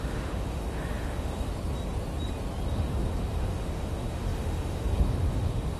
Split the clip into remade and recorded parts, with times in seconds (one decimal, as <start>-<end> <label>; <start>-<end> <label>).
0.0-1.5 remade; 1.5-2.7 recorded; 2.7-5.8 remade